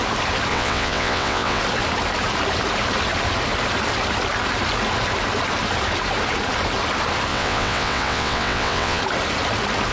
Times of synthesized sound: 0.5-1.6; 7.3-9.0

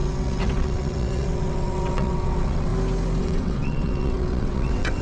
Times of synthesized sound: 0.0-2.7; 3.2-5.0

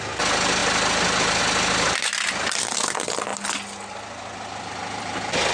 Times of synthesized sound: none

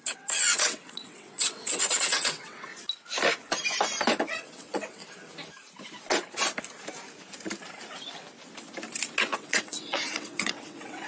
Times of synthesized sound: 0.0-2.7; 4.2-5.0; 9.2-11.1

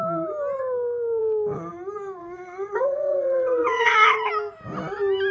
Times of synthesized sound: 2.2-4.3

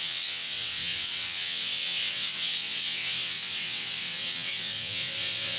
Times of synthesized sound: 0.0-5.6

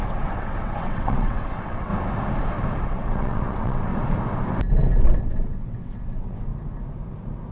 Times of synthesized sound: 0.0-1.9; 2.8-3.9; 5.0-6.5